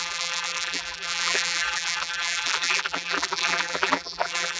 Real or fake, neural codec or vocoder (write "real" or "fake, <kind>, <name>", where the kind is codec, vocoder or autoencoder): fake, vocoder, BigVGAN v2